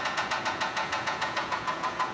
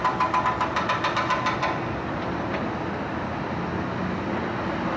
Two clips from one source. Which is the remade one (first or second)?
first